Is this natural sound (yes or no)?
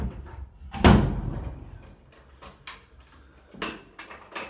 yes